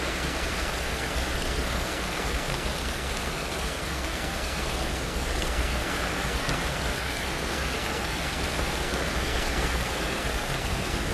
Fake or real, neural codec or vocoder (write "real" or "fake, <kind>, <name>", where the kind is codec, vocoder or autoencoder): fake, codec, SNAC